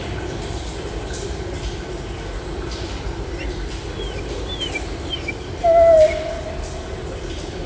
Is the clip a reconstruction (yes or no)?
no